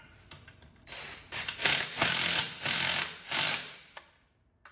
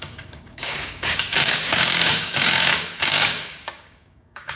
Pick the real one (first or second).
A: first